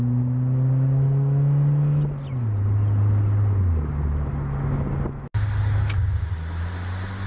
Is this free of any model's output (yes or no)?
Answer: yes